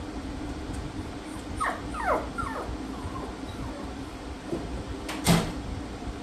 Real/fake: real